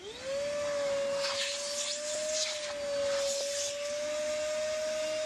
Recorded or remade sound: recorded